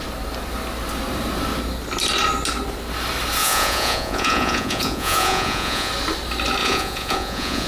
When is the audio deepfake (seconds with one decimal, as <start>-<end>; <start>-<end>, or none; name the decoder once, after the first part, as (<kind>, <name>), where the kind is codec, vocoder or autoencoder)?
3.4-5.9 (vocoder, Vocos); 6.6-7.7